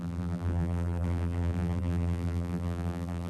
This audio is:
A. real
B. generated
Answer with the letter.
B